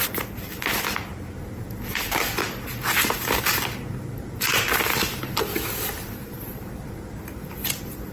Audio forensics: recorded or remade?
recorded